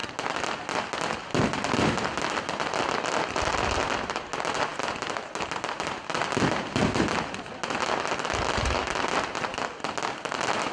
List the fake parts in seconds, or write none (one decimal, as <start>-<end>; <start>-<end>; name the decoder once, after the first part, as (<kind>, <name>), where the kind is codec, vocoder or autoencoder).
none